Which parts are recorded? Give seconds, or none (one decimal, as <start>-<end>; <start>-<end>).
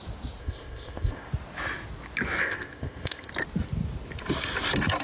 0.0-0.4; 1.3-2.4; 3.3-5.0